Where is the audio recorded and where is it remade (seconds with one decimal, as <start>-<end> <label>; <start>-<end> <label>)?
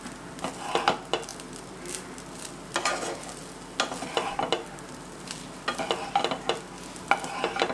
0.0-7.7 recorded